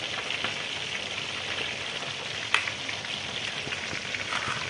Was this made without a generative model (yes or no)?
yes